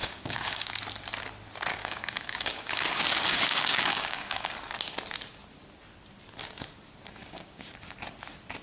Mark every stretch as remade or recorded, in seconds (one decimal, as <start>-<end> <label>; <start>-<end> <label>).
0.0-0.8 remade; 0.8-1.7 recorded; 1.7-4.5 remade; 4.5-7.2 recorded; 7.2-7.7 remade; 7.7-8.6 recorded